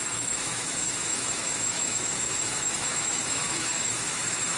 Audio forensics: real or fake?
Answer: fake